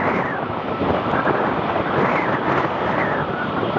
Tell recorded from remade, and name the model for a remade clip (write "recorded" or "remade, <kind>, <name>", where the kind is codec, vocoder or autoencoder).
recorded